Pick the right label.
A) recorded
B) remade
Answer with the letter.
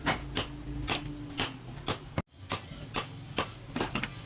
A